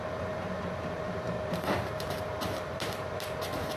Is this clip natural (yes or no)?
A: no